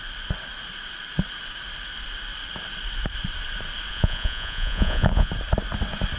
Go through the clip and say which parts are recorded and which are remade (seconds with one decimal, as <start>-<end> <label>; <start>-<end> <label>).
0.0-3.9 recorded; 3.9-5.3 remade; 5.3-6.2 recorded